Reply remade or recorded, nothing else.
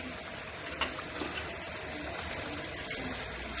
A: recorded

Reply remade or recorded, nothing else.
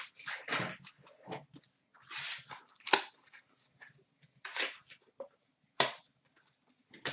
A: recorded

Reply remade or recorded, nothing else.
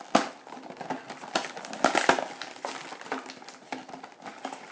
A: recorded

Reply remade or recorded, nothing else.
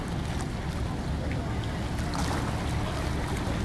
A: recorded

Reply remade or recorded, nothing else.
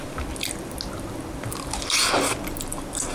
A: recorded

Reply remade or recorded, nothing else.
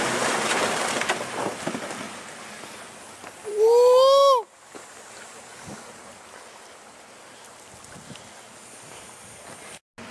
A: recorded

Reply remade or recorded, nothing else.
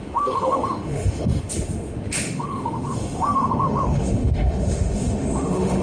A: remade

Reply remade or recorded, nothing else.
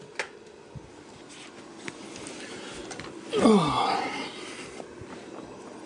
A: recorded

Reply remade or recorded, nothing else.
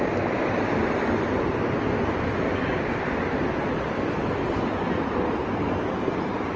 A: recorded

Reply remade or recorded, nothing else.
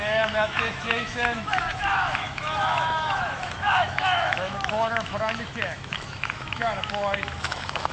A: remade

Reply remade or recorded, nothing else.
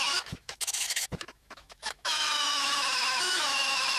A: remade